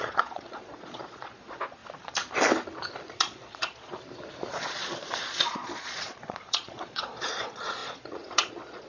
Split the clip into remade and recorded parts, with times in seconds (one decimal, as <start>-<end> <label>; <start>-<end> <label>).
0.0-1.8 remade; 1.8-3.2 recorded; 3.2-3.9 remade; 3.9-4.5 recorded; 4.5-8.9 remade